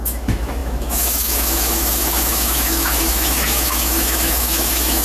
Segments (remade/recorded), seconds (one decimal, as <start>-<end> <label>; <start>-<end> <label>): 0.0-5.0 remade

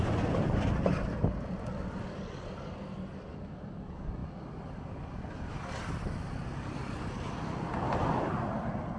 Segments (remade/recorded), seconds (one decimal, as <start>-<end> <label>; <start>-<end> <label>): 0.0-9.0 recorded

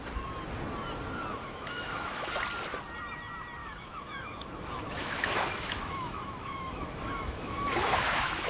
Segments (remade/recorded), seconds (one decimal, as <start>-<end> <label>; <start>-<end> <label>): 0.0-1.4 recorded; 1.4-2.3 remade; 2.3-3.6 recorded; 3.6-8.5 remade

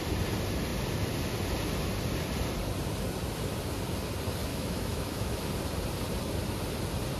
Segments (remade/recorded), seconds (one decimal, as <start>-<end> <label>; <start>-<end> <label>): 0.0-4.5 recorded; 4.5-5.5 remade; 5.5-7.2 recorded

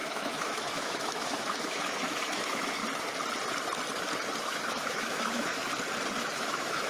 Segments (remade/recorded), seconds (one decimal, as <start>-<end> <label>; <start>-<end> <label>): 0.0-2.8 remade; 2.8-4.4 recorded; 4.4-5.6 remade; 5.6-6.2 recorded; 6.2-6.9 remade

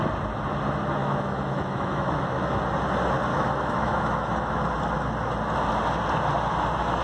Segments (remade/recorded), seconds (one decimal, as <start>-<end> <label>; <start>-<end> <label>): 0.0-1.0 recorded; 1.0-2.6 remade; 2.6-3.3 recorded; 3.3-4.6 remade; 4.6-7.0 recorded